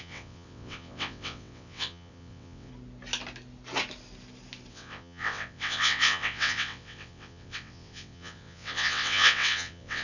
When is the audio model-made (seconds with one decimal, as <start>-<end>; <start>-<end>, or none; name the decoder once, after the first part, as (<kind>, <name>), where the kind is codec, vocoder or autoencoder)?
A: 0.0-2.7 (vocoder, WaveNeXt); 4.7-10.0